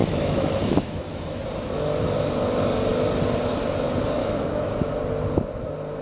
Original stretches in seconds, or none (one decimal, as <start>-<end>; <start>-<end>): 1.4-4.2; 4.9-6.0